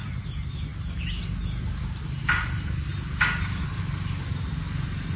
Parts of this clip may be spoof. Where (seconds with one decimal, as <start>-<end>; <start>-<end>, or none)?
none